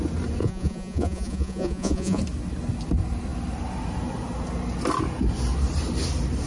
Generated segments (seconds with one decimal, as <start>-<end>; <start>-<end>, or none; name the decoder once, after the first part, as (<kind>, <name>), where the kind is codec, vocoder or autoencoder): 0.4-2.2 (vocoder, Vocos)